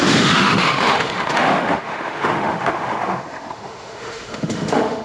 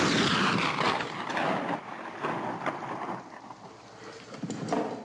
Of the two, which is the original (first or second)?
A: second